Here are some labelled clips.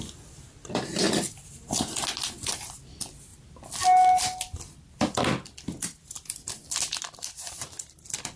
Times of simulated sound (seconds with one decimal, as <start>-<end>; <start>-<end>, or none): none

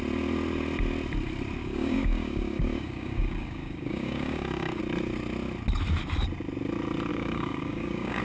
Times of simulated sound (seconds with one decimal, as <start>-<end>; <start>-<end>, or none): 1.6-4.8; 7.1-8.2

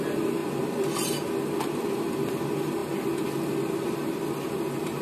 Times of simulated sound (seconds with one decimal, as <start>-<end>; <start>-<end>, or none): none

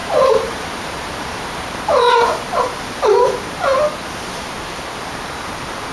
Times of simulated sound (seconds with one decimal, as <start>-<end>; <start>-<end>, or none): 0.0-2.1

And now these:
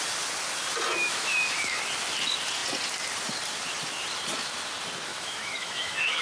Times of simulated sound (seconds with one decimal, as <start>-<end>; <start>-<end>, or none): 1.0-1.8; 5.1-6.2

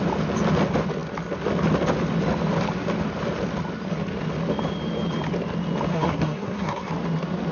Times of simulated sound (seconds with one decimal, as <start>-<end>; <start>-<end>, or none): 5.9-6.9

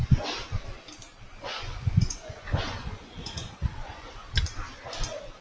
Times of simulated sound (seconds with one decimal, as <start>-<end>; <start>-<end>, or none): 1.4-4.3